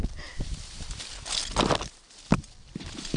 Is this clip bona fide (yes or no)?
yes